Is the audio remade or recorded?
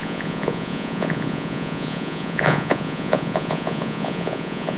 remade